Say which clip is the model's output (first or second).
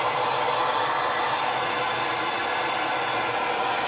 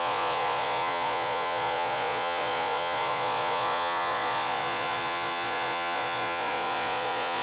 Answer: second